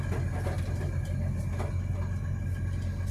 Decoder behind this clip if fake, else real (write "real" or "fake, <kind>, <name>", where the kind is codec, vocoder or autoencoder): real